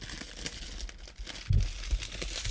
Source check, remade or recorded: recorded